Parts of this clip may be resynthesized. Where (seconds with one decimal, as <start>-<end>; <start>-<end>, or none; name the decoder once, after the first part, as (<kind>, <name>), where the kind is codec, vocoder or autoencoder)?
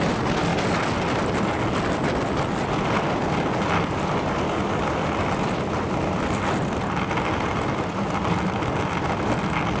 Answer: none